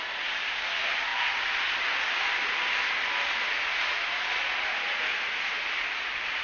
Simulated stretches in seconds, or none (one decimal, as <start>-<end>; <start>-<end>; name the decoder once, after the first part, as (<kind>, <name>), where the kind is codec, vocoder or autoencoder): none

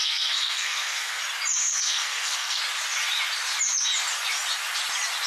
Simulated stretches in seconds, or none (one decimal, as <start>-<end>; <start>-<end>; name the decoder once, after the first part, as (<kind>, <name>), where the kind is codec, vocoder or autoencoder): 0.0-1.2 (codec, SNAC); 1.6-2.6